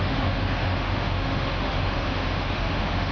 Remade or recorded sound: remade